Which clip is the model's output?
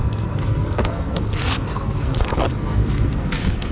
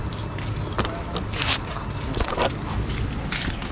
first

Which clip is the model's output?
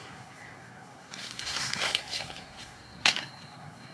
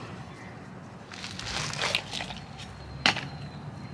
first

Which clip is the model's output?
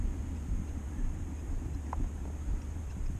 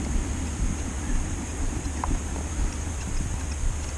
second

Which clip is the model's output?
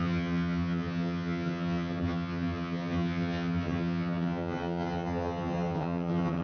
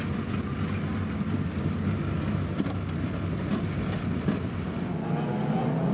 first